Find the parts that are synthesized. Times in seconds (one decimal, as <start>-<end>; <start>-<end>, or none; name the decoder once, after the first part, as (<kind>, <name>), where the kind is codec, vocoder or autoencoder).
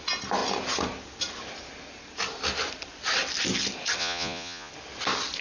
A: 4.0-4.7 (vocoder, Vocos)